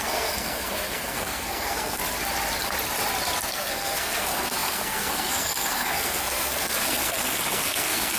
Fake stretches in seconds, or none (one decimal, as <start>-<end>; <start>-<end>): 0.0-2.0; 3.5-8.2